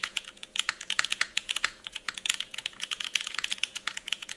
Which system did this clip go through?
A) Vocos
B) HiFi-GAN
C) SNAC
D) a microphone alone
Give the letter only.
A